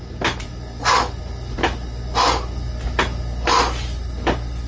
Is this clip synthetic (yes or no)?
no